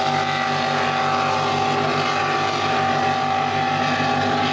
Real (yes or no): yes